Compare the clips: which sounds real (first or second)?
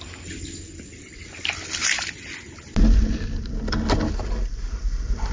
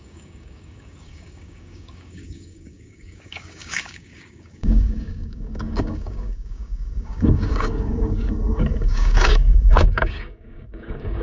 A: first